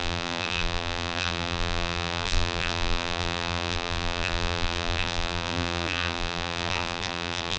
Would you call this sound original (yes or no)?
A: no